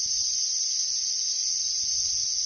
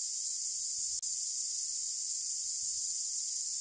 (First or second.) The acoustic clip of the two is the second